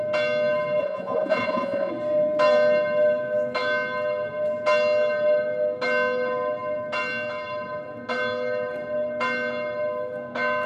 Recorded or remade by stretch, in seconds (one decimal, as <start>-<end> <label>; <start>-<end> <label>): 0.0-0.8 recorded; 0.8-1.9 remade; 1.9-10.7 recorded